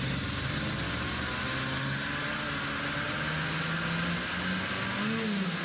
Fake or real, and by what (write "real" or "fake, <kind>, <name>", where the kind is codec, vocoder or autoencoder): real